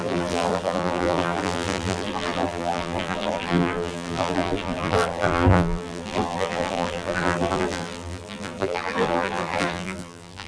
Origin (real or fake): fake